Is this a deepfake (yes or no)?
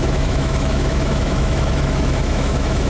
yes